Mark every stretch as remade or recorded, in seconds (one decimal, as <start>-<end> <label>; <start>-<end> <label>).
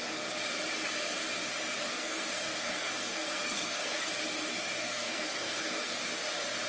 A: 0.0-1.9 recorded; 1.9-4.1 remade; 4.1-4.8 recorded; 4.8-5.9 remade; 5.9-6.7 recorded